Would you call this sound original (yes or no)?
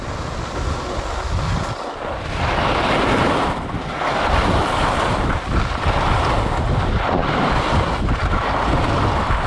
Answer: yes